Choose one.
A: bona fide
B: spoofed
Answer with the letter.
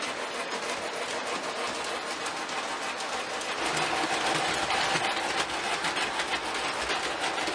A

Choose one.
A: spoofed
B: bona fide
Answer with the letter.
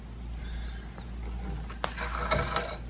B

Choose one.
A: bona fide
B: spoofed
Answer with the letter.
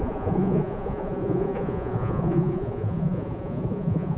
B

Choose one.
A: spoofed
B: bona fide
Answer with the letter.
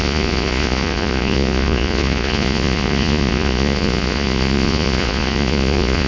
A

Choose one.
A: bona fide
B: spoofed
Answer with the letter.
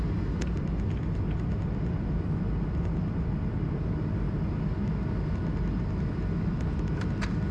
A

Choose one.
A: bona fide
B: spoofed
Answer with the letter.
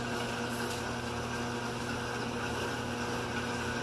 A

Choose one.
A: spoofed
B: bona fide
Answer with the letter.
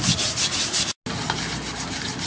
B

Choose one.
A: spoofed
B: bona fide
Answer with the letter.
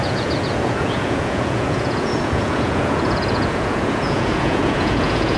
A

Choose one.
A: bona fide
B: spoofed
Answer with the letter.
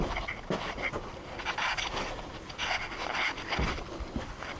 A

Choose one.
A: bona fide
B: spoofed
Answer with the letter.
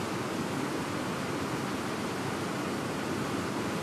A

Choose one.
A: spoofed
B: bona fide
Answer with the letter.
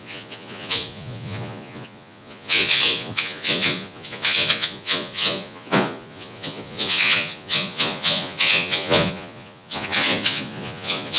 A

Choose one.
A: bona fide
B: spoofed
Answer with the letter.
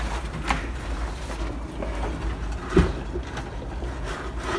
A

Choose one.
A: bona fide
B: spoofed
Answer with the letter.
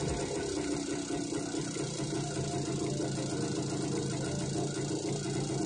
A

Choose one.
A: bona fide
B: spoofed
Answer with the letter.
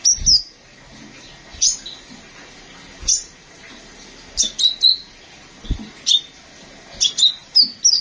A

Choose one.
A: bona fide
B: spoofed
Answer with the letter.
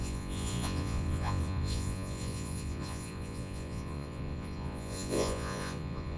B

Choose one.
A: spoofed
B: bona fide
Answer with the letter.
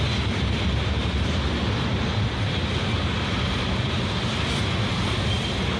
B